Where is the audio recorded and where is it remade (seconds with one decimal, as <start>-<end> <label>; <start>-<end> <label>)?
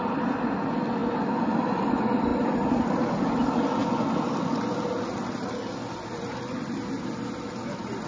0.0-1.0 recorded; 1.0-1.9 remade; 1.9-2.3 recorded; 2.3-3.2 remade; 3.2-8.1 recorded